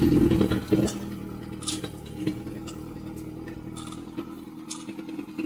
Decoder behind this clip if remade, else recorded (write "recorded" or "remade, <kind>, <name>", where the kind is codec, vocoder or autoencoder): recorded